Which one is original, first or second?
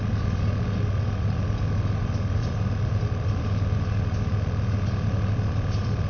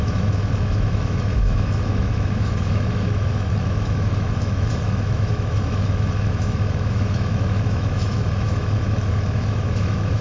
first